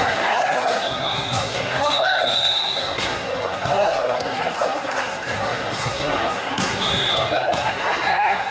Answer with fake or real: fake